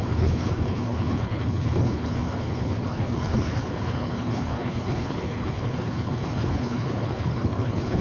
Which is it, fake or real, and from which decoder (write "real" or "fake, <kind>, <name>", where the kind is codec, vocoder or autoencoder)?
fake, codec, HILCodec